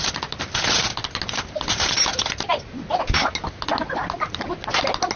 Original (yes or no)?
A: yes